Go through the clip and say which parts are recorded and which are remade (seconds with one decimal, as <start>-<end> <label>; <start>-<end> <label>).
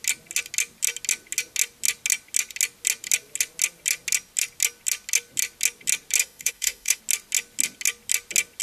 0.0-6.2 recorded; 6.2-7.0 remade; 7.0-8.6 recorded